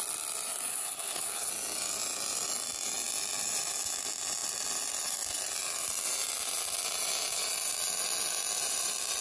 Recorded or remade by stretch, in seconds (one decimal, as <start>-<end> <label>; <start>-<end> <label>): 0.0-0.7 recorded; 0.7-1.5 remade; 1.5-9.2 recorded